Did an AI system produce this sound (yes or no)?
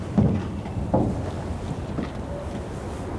no